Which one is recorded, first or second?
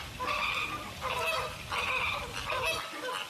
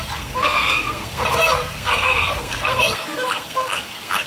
first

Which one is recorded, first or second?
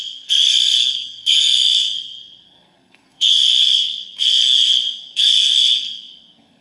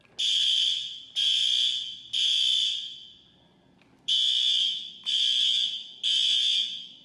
second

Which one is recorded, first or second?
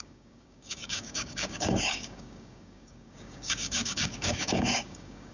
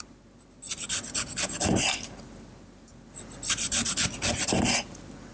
second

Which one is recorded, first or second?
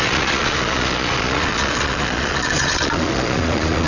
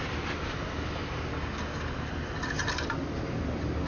second